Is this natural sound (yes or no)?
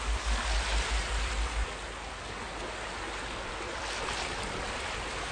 yes